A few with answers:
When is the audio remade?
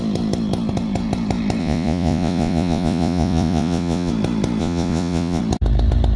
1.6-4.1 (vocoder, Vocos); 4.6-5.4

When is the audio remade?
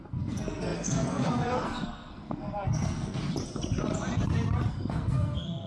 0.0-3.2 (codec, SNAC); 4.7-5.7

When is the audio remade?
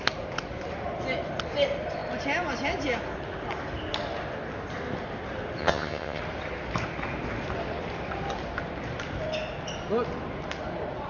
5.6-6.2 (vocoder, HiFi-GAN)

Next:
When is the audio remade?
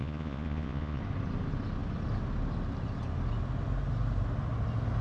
0.0-1.0 (vocoder, Vocos)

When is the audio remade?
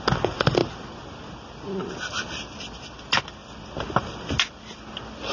none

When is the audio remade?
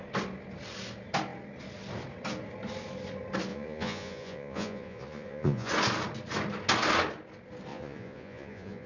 3.5-5.7 (vocoder, Vocos); 7.7-8.9